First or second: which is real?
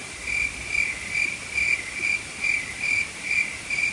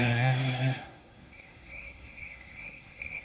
first